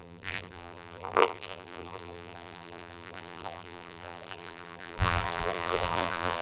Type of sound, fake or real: fake